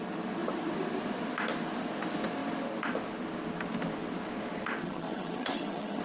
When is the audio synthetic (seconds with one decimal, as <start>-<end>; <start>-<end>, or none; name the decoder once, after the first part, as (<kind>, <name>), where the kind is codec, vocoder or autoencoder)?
4.8-6.0 (vocoder, HiFi-GAN)